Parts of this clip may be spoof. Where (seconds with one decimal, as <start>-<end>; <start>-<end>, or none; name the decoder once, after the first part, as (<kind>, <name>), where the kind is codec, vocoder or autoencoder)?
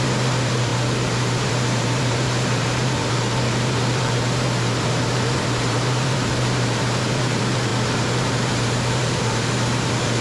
0.0-10.2 (vocoder, BigVGAN v2)